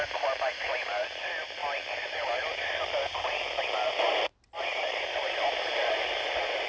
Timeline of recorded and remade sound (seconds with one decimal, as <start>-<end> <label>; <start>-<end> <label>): 0.0-6.7 recorded